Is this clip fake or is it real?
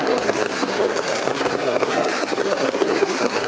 fake